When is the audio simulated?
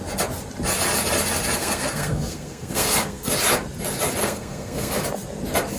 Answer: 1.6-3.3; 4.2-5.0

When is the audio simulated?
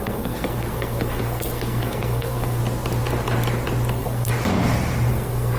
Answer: 0.0-2.6; 3.9-4.3; 5.1-5.6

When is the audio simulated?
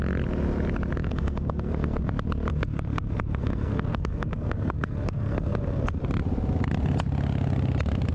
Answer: 1.0-2.1; 2.5-6.0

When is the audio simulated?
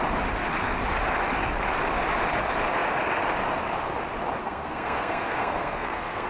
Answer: 4.4-6.3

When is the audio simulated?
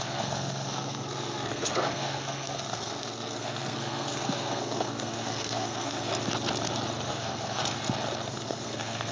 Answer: 0.0-6.1; 7.1-7.6; 8.3-9.1